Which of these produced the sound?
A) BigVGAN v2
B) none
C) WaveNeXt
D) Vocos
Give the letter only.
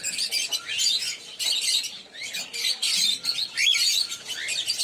B